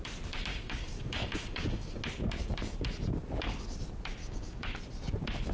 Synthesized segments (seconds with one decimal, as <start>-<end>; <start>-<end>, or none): 0.5-2.0; 4.2-4.8